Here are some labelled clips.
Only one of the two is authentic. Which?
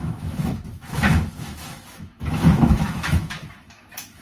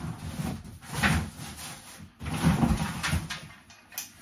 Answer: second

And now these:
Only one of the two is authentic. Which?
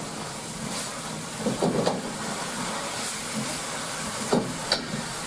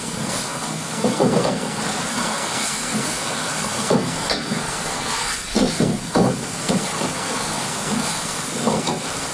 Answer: first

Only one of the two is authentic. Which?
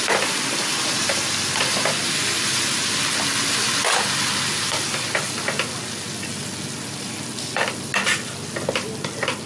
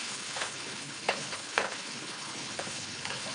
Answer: first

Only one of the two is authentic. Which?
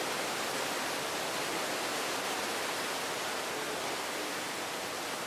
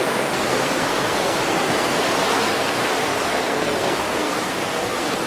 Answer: first